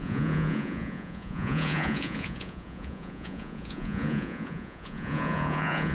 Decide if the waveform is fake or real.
fake